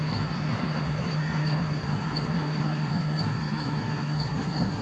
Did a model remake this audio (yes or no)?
yes